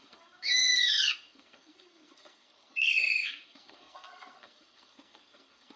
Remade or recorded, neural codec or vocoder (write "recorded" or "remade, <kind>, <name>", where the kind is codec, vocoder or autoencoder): remade, codec, SNAC